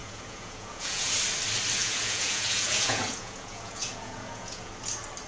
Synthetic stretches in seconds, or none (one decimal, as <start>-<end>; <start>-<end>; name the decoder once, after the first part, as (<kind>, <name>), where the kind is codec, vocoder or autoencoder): 0.0-1.1 (vocoder, Vocos); 1.8-4.7